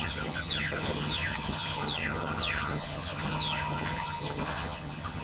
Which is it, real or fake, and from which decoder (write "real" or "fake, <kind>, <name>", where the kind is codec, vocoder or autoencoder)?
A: fake, vocoder, HiFi-GAN